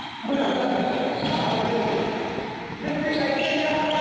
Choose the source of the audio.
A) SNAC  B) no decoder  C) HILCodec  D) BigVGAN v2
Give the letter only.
B